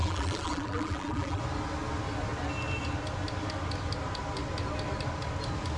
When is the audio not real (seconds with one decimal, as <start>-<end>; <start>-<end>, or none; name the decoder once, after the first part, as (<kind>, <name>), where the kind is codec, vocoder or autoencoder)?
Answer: 0.0-1.4 (vocoder, BigVGAN v2)